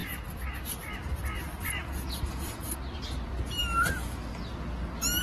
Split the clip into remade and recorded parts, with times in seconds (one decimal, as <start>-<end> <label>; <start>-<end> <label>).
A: 0.0-5.2 recorded